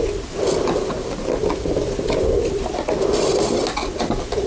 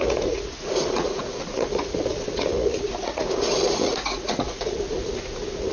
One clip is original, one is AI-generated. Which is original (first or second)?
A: first